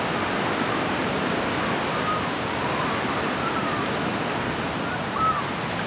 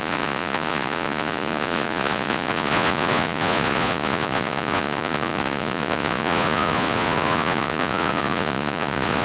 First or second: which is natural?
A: first